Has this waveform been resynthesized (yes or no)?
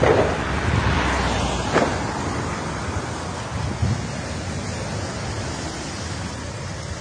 no